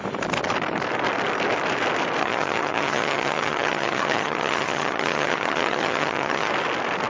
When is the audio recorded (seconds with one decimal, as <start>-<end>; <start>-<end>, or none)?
0.0-2.2; 6.5-7.1